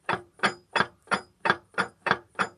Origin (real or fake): fake